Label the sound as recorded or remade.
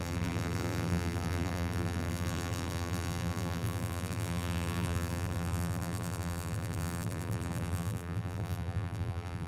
remade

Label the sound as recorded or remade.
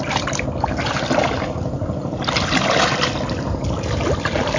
recorded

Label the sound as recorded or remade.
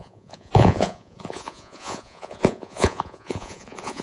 remade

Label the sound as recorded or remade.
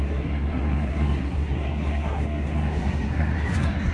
remade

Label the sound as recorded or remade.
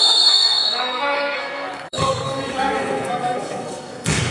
remade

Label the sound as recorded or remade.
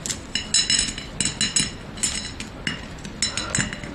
recorded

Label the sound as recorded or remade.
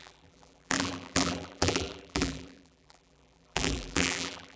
remade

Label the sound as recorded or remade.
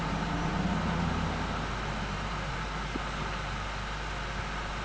recorded